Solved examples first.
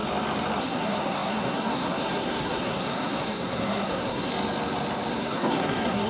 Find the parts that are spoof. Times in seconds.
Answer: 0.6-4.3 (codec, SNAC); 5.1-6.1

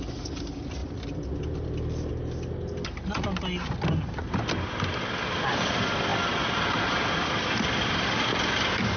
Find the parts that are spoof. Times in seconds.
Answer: none

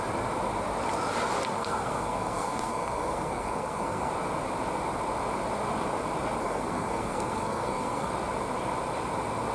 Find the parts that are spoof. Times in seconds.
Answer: 1.5-4.1 (codec, SNAC); 6.4-8.1

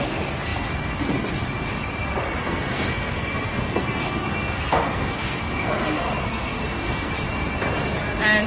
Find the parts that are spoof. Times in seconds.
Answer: 2.4-7.1 (codec, SNAC)

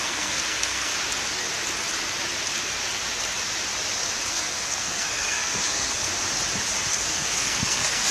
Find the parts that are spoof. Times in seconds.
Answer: 0.0-0.9 (codec, SNAC); 4.3-6.1; 6.9-8.1

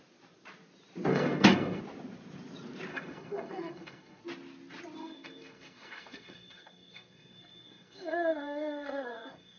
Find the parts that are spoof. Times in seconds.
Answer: 1.1-1.8 (codec, SNAC); 2.9-4.2; 5.0-9.6

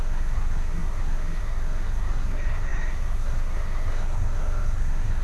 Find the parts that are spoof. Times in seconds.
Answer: 0.0-5.2 (codec, SNAC)

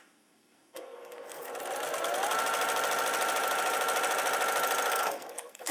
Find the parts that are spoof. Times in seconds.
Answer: 0.0-1.5 (codec, SNAC); 4.9-5.7